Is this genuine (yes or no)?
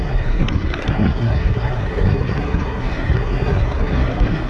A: no